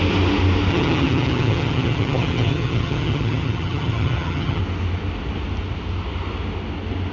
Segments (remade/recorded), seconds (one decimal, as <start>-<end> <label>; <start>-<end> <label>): 0.0-0.7 recorded; 0.7-4.6 remade; 4.6-7.1 recorded